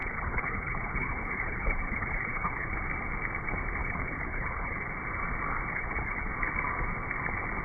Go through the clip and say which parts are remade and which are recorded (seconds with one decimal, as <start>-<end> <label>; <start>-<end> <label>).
0.0-2.9 remade; 2.9-3.8 recorded; 3.8-4.8 remade; 4.8-5.7 recorded; 5.7-6.3 remade; 6.3-7.6 recorded